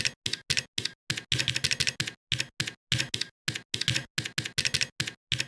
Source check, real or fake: real